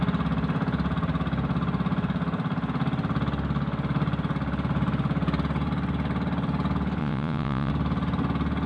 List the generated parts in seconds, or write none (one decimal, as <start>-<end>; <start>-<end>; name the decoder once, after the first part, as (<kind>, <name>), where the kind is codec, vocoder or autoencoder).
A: 7.0-7.7 (vocoder, Vocos)